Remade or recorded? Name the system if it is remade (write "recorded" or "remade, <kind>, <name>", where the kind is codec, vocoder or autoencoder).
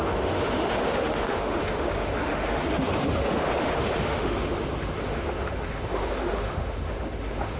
remade, autoencoder, DAC-VAE